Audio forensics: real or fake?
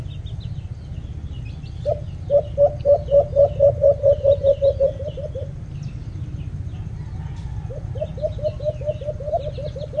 real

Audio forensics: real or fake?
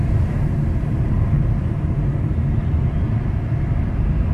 real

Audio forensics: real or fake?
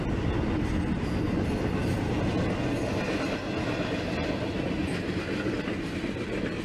real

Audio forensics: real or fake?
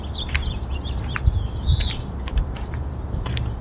fake